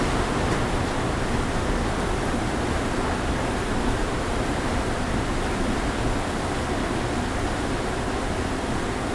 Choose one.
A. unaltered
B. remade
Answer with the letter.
A